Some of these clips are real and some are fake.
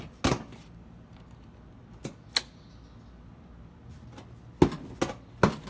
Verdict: real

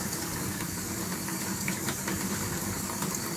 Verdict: fake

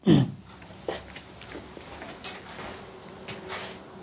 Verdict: real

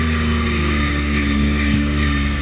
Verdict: fake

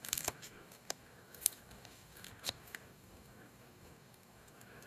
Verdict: fake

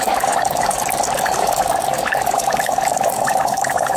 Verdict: fake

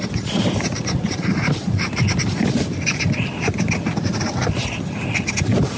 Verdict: real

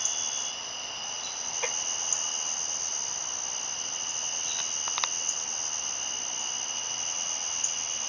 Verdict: real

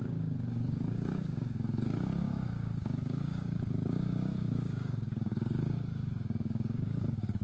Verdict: fake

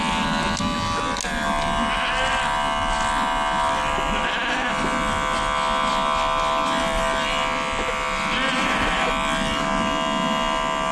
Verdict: real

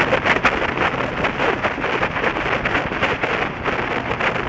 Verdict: real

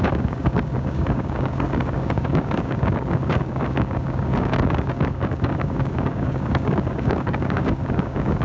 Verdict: fake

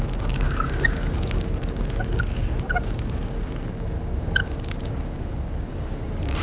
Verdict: fake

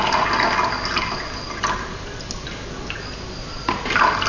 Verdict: real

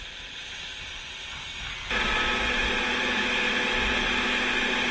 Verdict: real